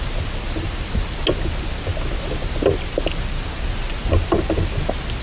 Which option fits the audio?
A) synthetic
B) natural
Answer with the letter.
B